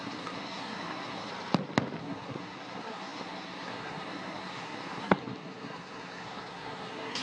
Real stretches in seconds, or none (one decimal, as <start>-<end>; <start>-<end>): 1.3-2.0